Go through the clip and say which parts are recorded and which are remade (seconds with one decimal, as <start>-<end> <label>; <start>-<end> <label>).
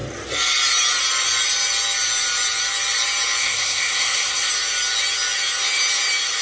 0.0-3.4 recorded; 3.4-4.5 remade; 4.5-6.4 recorded